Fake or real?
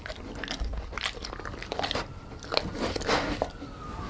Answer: real